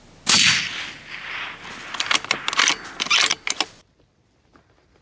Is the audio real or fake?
real